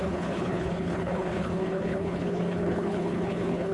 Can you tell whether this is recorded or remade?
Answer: remade